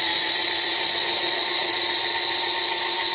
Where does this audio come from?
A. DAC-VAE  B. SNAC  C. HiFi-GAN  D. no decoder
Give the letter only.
D